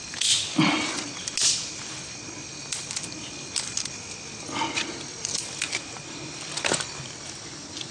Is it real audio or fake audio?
real